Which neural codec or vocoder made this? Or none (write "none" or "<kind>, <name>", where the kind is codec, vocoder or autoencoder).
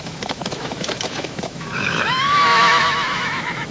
autoencoder, DAC-VAE